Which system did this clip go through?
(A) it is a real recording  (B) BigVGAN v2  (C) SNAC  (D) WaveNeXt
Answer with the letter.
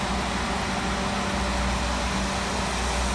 A